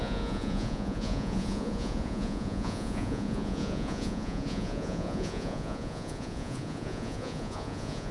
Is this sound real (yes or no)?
no